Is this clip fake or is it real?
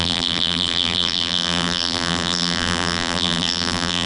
fake